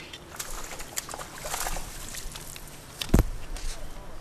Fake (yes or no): no